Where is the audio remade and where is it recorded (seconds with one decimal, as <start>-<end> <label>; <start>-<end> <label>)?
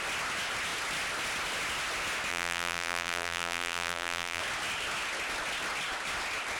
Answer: 0.0-2.3 recorded; 2.3-4.4 remade; 4.4-6.6 recorded